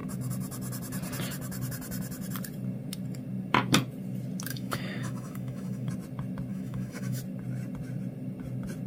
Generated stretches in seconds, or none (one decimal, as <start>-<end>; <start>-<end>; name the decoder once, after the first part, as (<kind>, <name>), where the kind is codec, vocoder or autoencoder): 4.5-5.9 (autoencoder, DAC-VAE); 6.5-7.2